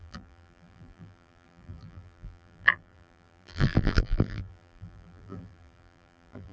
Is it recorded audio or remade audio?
remade